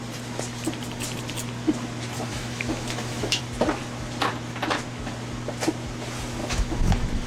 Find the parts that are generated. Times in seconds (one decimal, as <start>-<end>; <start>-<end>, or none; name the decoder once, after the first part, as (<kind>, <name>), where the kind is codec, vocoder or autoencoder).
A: 2.3-3.4 (autoencoder, DAC-VAE); 6.4-7.3